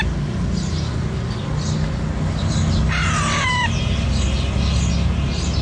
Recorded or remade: recorded